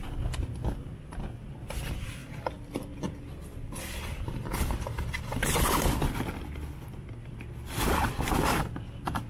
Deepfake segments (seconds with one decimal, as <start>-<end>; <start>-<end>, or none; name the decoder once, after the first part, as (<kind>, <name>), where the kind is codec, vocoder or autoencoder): none